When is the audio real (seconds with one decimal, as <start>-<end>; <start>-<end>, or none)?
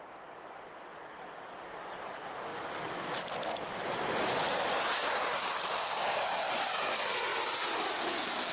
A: 0.0-8.5